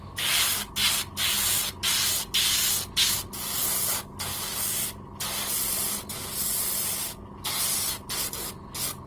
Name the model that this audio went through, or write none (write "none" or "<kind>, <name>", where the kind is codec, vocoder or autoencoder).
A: none